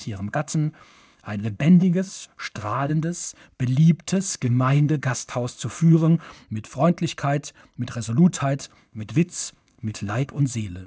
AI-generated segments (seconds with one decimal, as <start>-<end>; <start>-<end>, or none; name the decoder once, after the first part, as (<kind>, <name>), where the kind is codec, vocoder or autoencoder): 0.0-2.9 (codec, ZipCodec); 4.3-6.3; 8.6-10.4